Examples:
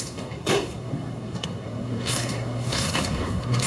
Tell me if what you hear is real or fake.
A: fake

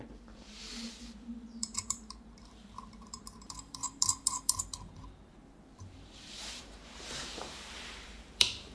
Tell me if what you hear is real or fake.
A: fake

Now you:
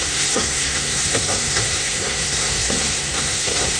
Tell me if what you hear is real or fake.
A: fake